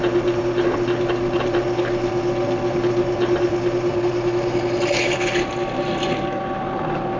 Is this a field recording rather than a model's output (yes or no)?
yes